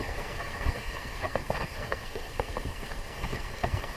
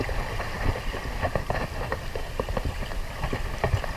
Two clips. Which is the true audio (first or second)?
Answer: second